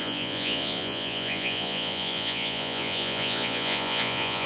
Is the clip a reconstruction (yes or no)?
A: yes